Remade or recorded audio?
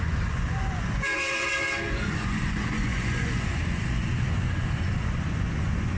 remade